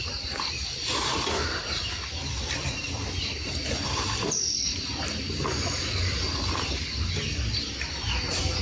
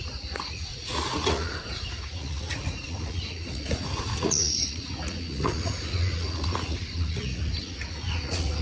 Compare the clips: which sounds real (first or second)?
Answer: first